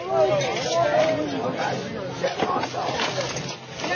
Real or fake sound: real